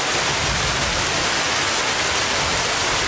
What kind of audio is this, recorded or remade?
recorded